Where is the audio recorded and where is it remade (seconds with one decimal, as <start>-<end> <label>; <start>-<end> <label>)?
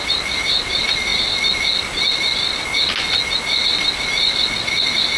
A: 0.0-1.1 remade; 1.1-4.2 recorded; 4.2-5.2 remade